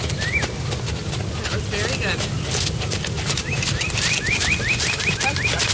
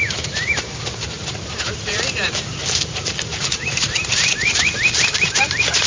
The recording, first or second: first